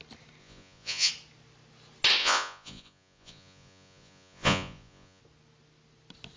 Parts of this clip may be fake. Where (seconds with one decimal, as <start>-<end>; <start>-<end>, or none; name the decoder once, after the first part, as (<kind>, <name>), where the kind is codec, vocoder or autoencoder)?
0.4-1.1 (vocoder, Vocos); 2.2-5.2